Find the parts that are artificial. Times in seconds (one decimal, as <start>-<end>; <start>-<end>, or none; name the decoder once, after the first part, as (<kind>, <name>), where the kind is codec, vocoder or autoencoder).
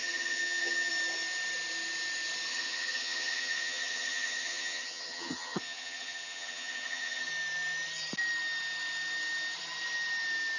0.0-0.9 (vocoder, HiFi-GAN); 2.5-7.3